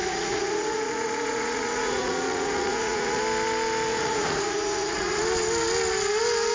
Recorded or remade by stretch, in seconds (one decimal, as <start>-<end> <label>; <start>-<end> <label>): 0.0-3.2 remade; 3.2-3.9 recorded; 3.9-5.2 remade; 5.2-6.5 recorded